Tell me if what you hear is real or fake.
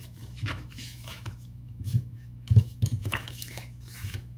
fake